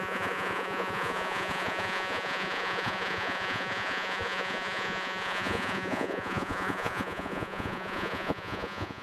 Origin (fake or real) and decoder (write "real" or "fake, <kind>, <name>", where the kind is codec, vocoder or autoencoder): fake, vocoder, Vocos